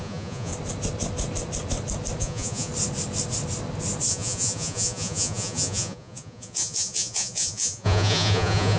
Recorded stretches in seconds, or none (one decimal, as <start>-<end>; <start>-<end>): 0.5-2.2; 2.7-4.1

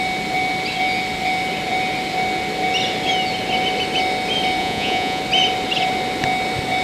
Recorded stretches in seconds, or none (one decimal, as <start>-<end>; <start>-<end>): 0.0-4.6; 5.2-6.8

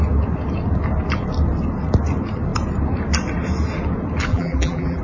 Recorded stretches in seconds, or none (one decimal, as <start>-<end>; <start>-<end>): 0.0-4.3

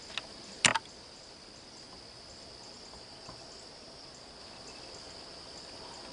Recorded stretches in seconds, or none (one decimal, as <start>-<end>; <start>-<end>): 0.0-6.1

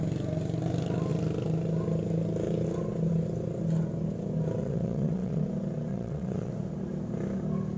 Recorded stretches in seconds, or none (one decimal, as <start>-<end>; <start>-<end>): 0.0-4.6; 5.4-5.9; 6.5-7.8

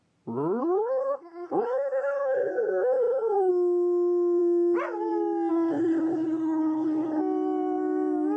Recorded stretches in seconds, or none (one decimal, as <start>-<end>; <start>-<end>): 0.0-0.6; 3.5-5.5; 7.2-8.4

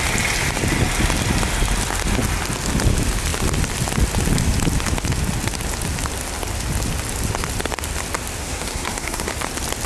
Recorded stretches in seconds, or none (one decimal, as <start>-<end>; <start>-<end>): 0.0-8.4; 9.3-9.9